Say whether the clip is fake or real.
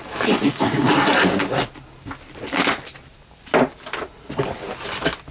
real